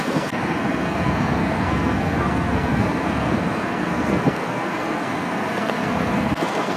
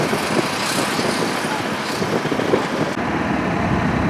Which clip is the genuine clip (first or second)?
second